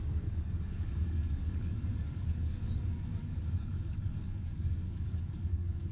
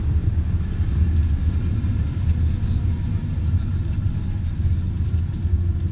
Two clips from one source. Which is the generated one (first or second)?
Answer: first